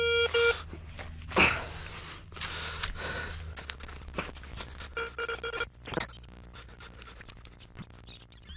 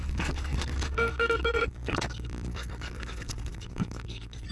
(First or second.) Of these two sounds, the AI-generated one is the second